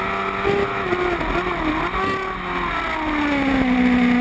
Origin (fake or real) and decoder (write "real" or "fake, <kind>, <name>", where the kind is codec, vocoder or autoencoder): real